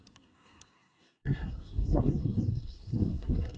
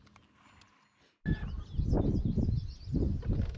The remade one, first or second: first